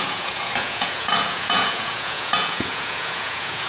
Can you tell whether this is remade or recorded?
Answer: remade